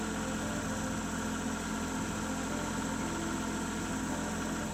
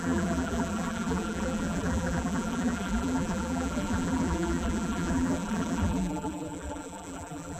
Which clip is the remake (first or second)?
second